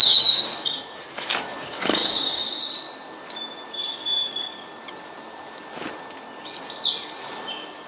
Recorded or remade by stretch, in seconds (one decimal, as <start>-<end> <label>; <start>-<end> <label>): 0.0-2.6 remade; 2.6-3.9 recorded; 3.9-4.7 remade; 4.7-7.9 recorded